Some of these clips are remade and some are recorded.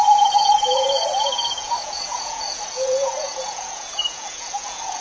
remade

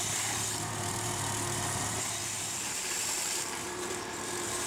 remade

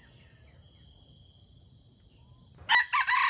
recorded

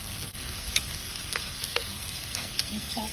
remade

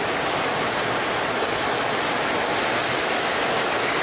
recorded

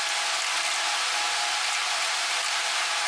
recorded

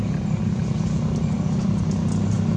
recorded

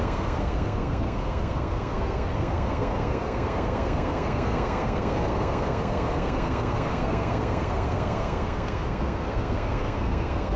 remade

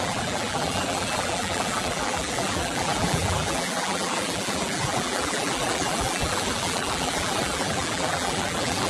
remade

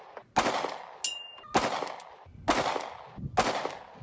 recorded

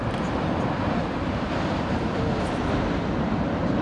recorded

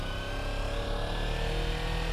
recorded